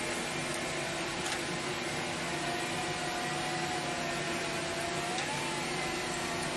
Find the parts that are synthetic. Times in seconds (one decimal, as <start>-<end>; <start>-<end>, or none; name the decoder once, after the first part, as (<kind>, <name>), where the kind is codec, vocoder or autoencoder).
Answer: none